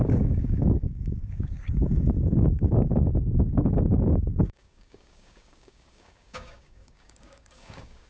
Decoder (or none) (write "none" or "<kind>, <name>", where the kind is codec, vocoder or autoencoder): codec, DAC